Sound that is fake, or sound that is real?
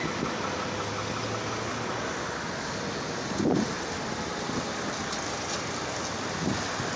real